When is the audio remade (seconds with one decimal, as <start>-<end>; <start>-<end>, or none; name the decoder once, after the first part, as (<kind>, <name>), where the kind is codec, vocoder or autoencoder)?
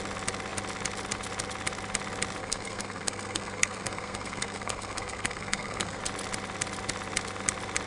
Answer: 2.4-6.0 (codec, SNAC)